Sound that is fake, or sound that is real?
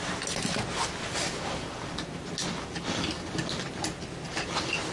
real